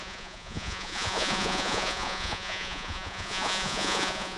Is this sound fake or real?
fake